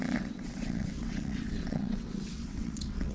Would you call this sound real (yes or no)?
no